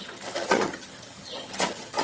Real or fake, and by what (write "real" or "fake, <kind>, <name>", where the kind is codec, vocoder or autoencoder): fake, vocoder, HiFi-GAN